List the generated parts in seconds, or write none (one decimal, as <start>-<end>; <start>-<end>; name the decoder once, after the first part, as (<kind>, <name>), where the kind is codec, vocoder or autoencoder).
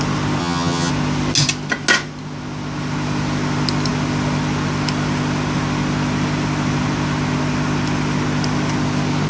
0.4-0.9 (vocoder, HiFi-GAN)